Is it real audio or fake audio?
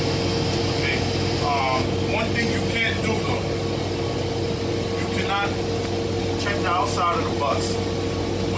real